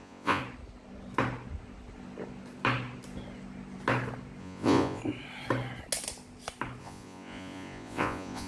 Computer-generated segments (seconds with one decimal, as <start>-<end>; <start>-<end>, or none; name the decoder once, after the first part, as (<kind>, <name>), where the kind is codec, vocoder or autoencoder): 0.0-0.4 (vocoder, Vocos); 4.4-5.0; 6.8-8.5